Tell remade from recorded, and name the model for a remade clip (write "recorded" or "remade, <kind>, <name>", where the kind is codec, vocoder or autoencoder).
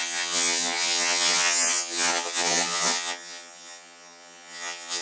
remade, vocoder, HiFi-GAN